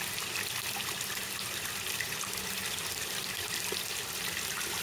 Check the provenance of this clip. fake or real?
real